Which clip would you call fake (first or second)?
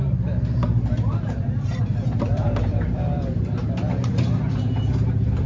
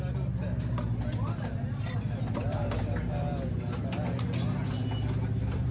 first